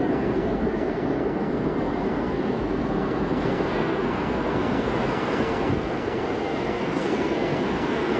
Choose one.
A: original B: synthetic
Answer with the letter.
B